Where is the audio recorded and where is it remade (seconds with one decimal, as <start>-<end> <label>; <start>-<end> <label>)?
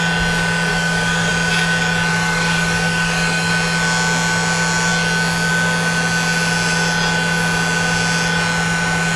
0.0-0.7 recorded; 0.7-1.3 remade; 1.3-2.1 recorded; 2.1-3.5 remade; 3.5-9.2 recorded